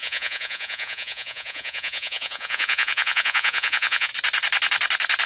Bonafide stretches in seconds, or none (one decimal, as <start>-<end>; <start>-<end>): 4.1-5.3